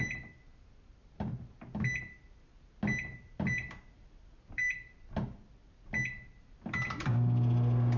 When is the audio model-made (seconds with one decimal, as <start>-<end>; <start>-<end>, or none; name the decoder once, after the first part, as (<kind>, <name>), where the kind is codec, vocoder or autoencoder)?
0.0-1.0 (vocoder, BigVGAN v2); 3.4-4.6; 6.4-7.1